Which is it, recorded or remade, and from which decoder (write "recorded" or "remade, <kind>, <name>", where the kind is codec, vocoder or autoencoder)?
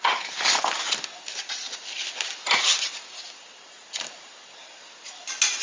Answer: recorded